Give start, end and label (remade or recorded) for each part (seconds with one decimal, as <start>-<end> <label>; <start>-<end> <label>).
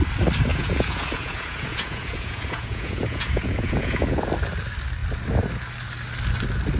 0.0-0.5 recorded; 0.5-4.3 remade; 4.3-6.8 recorded